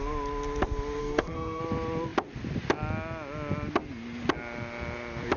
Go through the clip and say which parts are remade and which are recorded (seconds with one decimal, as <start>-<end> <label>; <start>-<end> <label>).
0.0-1.0 recorded; 1.0-1.6 remade; 1.6-5.4 recorded